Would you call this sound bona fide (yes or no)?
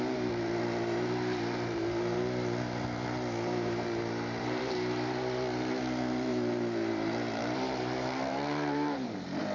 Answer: no